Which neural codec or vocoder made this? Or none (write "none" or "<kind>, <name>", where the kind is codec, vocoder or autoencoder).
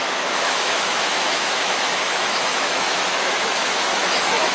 autoencoder, DAC-VAE